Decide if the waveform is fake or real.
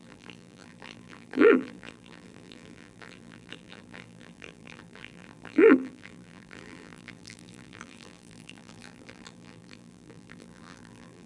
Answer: fake